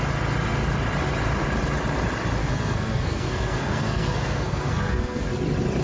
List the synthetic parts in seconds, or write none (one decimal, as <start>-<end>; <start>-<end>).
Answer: 2.4-5.3